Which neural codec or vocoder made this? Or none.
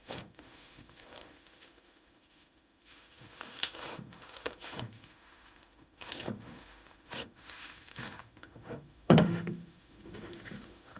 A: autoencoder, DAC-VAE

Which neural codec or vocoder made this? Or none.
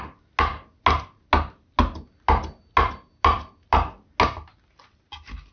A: none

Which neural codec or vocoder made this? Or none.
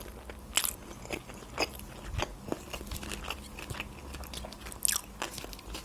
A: none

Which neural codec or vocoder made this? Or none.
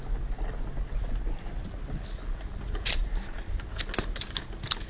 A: none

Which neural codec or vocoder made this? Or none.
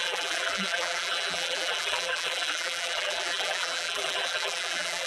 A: vocoder, BigVGAN v2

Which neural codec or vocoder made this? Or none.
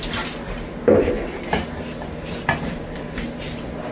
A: none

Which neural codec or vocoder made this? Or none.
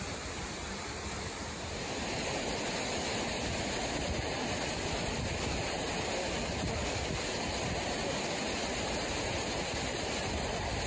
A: none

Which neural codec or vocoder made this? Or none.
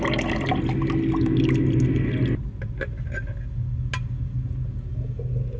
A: none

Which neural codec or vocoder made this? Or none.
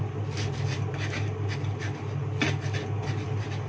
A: none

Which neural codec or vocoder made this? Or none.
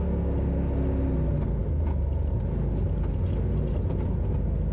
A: none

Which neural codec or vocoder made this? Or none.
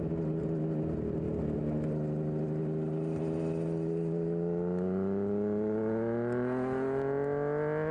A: none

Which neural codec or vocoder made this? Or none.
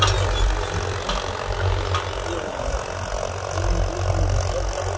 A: none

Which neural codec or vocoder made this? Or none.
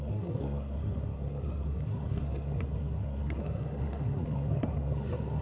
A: codec, SNAC